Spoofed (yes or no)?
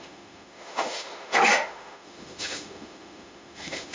yes